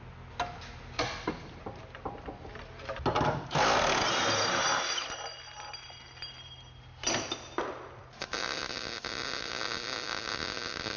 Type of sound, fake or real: real